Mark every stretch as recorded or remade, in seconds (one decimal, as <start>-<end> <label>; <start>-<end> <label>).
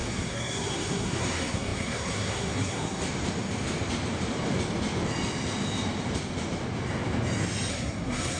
0.0-3.0 remade; 3.0-7.7 recorded; 7.7-8.4 remade